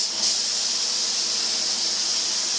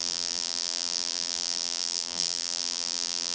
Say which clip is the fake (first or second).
second